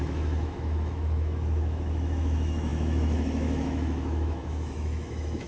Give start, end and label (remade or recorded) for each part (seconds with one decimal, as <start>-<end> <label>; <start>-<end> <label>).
0.0-5.5 remade